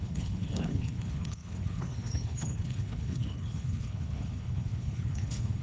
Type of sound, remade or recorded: remade